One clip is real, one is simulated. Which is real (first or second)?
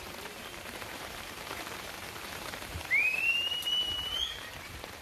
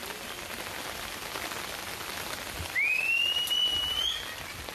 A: second